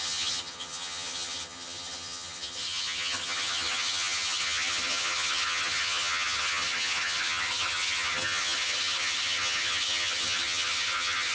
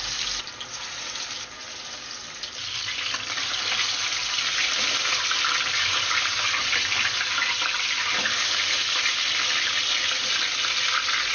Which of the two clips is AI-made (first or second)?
first